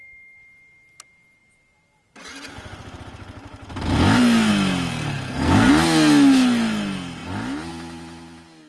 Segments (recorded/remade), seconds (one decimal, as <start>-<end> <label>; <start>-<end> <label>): 0.0-4.9 recorded; 4.9-5.7 remade; 5.7-8.7 recorded